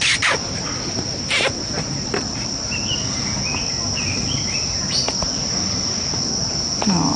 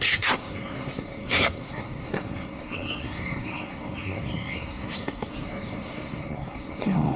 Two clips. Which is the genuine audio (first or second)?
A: first